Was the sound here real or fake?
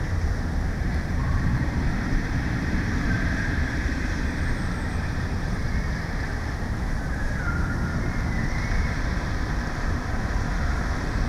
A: fake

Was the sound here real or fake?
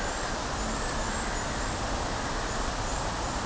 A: fake